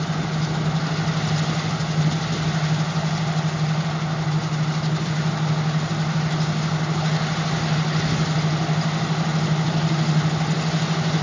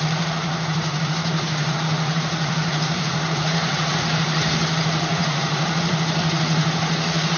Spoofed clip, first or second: second